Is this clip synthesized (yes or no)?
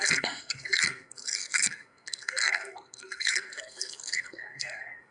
yes